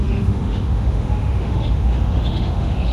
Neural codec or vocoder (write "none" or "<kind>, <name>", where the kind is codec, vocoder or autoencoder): autoencoder, DAC-VAE